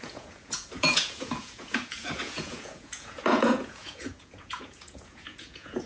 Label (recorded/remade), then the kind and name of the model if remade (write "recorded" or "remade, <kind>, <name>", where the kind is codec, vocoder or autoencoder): remade, vocoder, Vocos